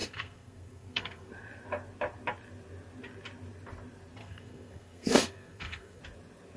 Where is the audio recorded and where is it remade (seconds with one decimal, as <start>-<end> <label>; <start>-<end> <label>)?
0.0-1.3 remade; 1.3-4.2 recorded; 4.2-6.0 remade; 6.0-6.6 recorded